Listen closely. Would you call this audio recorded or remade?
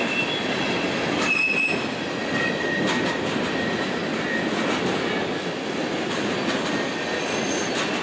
recorded